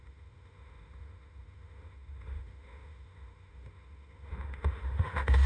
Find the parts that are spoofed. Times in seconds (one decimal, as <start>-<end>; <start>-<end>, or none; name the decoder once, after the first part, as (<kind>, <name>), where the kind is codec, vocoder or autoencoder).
0.0-5.5 (autoencoder, DAC-VAE)